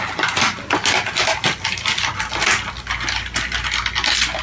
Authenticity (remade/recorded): recorded